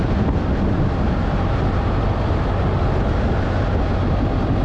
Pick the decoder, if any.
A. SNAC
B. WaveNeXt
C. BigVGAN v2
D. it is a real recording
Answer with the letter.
D